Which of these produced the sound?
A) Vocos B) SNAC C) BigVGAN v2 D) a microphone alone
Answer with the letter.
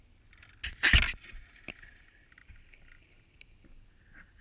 D